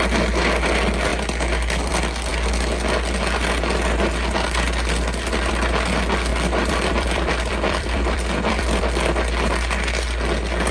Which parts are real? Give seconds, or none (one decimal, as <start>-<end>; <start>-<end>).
0.0-6.3; 8.8-10.7